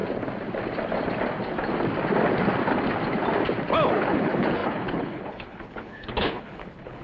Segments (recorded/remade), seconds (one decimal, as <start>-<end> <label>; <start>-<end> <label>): 0.0-3.9 recorded; 3.9-7.0 remade